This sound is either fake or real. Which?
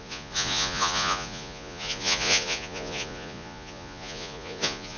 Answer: fake